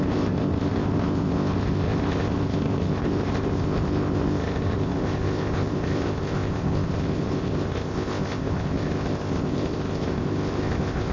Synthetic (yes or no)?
yes